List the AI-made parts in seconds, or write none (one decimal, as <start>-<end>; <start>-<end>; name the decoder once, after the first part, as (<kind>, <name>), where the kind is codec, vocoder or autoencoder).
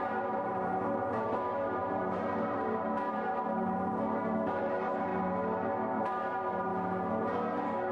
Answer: 0.0-5.1 (vocoder, BigVGAN v2); 6.0-6.7; 7.2-7.9